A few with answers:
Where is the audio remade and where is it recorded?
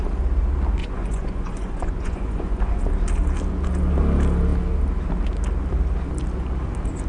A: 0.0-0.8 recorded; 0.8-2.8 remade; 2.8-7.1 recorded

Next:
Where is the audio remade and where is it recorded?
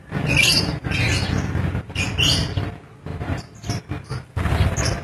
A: 0.0-0.4 recorded; 0.4-1.1 remade; 1.1-3.1 recorded; 3.1-3.8 remade; 3.8-5.0 recorded